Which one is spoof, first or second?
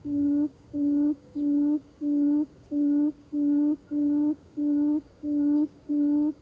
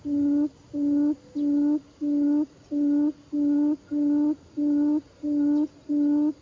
first